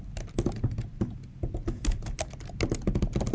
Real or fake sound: real